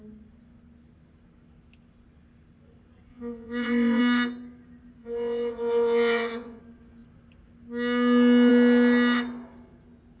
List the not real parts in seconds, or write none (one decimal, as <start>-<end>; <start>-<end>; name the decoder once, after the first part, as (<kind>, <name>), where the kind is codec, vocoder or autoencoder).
3.1-4.0 (vocoder, Vocos); 5.0-6.6